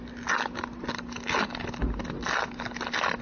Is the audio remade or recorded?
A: recorded